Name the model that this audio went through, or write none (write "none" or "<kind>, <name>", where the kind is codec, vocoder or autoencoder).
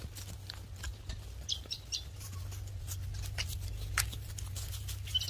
none